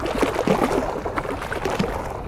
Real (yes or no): yes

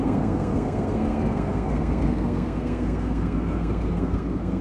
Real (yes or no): no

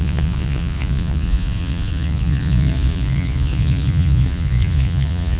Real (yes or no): no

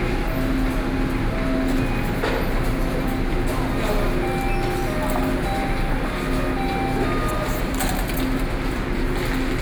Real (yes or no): yes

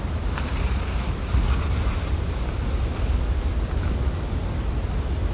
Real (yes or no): yes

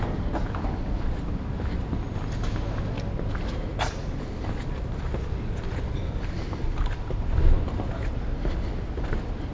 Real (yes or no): yes